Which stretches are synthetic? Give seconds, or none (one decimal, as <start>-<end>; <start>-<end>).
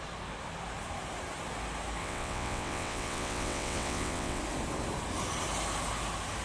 2.0-4.4